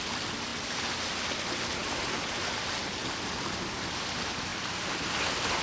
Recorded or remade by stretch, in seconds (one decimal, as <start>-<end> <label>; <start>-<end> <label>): 0.0-5.6 recorded